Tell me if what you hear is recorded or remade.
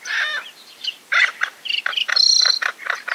remade